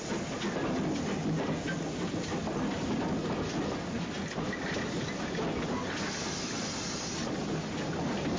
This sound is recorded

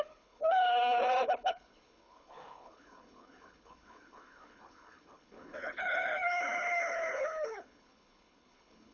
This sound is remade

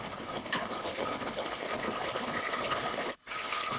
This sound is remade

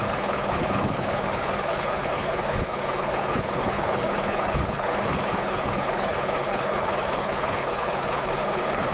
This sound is remade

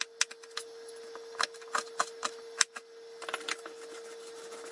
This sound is recorded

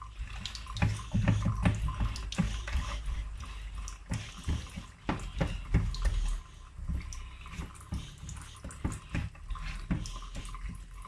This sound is recorded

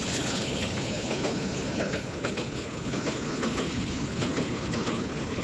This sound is remade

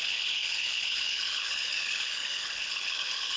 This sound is remade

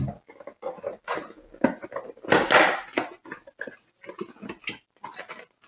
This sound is recorded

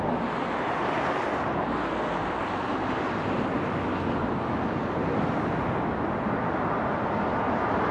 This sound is recorded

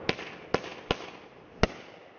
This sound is recorded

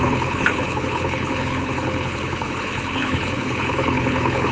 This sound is remade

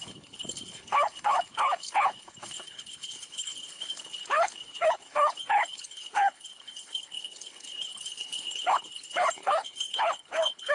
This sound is remade